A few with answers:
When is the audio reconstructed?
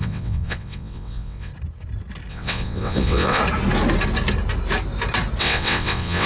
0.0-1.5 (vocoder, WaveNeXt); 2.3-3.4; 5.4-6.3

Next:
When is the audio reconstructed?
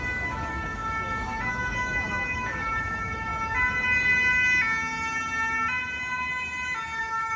0.0-3.3 (autoencoder, DAC-VAE); 7.0-7.4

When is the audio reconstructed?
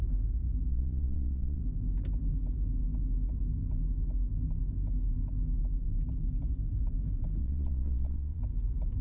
0.7-1.6 (vocoder, Vocos); 7.4-8.4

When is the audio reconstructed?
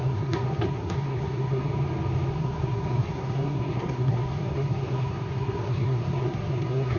0.0-1.7 (codec, SNAC); 2.3-7.0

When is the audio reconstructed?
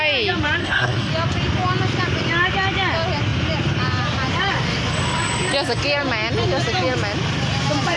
0.6-1.1 (codec, SNAC)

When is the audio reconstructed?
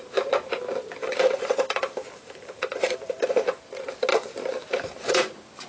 1.0-3.6 (vocoder, BigVGAN v2); 4.1-5.1